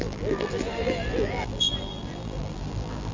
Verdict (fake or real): fake